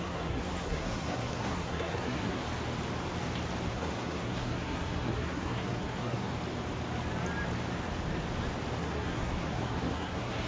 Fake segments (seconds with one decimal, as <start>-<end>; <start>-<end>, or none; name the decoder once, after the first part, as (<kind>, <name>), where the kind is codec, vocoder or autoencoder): 0.0-2.4 (codec, SNAC); 3.7-6.3; 8.8-10.5